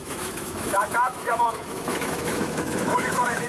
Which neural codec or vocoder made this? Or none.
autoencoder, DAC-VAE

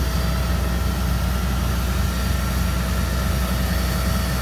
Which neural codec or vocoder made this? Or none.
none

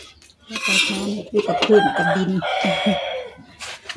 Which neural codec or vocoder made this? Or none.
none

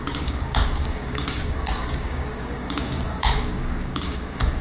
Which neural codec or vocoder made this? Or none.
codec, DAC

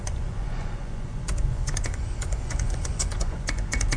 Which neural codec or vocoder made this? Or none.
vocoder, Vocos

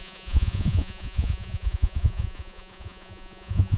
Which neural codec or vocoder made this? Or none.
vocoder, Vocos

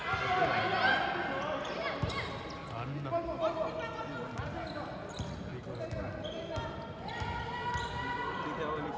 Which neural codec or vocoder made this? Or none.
none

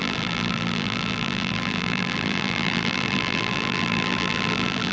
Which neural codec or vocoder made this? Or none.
vocoder, BigVGAN v2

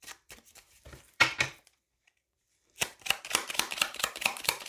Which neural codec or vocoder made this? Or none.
vocoder, BigVGAN v2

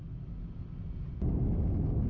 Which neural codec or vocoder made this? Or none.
none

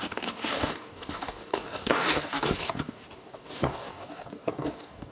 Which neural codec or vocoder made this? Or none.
codec, DAC